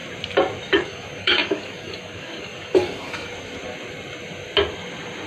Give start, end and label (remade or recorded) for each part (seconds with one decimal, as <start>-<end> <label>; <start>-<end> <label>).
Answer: 0.0-0.7 recorded; 0.7-3.3 remade; 3.3-5.3 recorded